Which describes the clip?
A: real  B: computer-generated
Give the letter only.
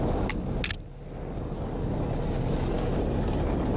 A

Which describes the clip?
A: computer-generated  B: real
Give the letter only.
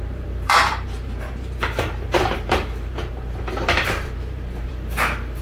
A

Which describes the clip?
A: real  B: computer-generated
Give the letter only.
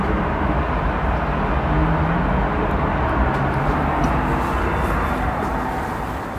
A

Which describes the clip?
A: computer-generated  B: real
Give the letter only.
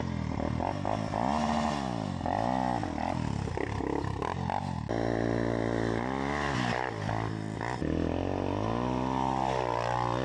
B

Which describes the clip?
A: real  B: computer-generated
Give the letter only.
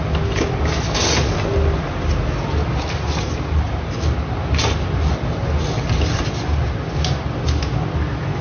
A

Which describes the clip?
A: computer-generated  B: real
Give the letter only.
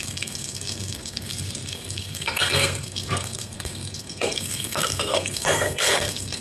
A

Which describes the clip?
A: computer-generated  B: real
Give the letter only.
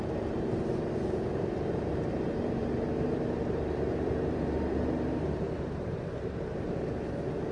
A